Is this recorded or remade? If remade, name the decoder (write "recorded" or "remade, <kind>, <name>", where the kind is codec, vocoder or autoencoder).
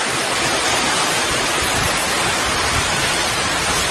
recorded